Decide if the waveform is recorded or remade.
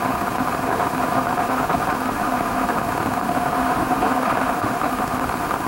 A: remade